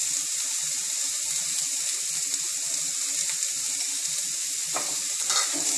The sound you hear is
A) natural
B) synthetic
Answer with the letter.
A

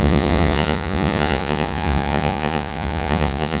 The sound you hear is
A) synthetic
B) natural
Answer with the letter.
A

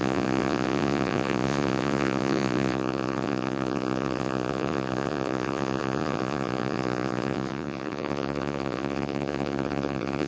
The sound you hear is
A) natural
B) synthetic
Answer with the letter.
B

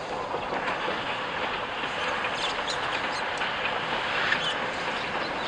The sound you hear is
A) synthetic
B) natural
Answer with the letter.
B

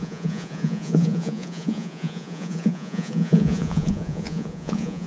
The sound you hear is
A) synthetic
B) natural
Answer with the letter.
A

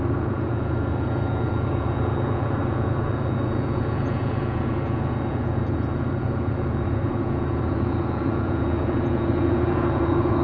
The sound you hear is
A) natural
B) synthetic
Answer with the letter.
B